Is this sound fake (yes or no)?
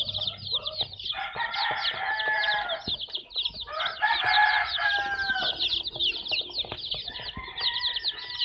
no